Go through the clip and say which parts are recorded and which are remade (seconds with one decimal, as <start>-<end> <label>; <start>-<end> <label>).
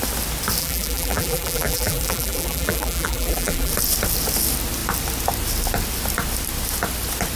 0.0-0.6 recorded; 0.6-3.7 remade; 3.7-7.4 recorded